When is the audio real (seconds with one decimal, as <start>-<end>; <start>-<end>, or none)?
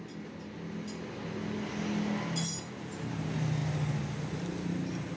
0.0-5.2